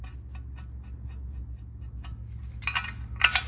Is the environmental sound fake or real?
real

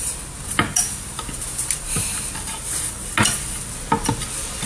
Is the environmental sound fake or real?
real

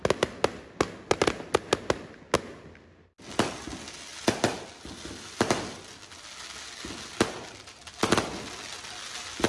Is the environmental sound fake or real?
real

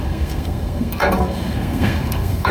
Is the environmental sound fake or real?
fake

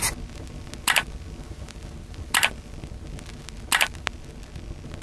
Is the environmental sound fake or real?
real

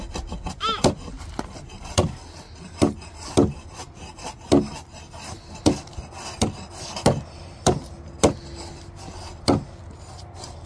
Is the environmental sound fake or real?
real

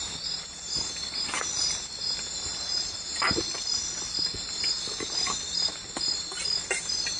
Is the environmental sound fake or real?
real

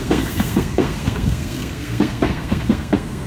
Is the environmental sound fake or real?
fake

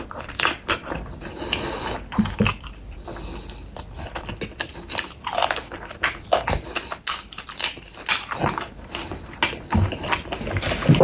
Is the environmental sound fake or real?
real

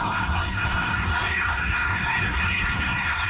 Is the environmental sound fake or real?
fake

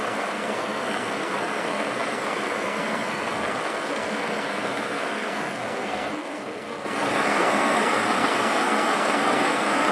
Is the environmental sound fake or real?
fake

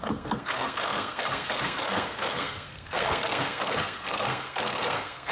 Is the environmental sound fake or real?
fake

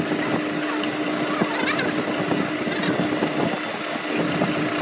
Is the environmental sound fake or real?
real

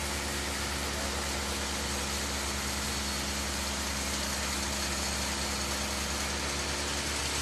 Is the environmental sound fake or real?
real